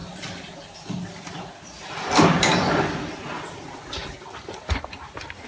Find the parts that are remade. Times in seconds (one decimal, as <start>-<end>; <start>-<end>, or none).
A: 0.0-4.0; 4.6-5.5